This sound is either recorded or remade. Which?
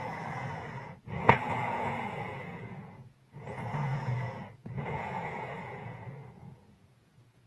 remade